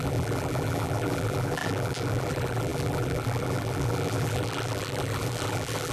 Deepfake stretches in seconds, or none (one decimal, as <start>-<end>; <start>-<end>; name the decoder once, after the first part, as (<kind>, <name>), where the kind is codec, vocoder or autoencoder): 0.0-5.9 (vocoder, BigVGAN v2)